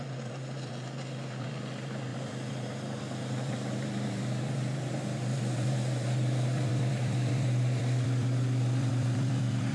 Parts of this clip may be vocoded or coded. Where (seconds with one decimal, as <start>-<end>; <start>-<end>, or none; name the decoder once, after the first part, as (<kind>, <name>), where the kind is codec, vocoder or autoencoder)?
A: 0.0-9.7 (vocoder, BigVGAN v2)